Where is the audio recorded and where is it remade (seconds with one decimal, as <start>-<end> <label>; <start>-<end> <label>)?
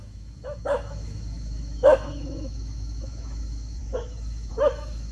0.0-5.1 remade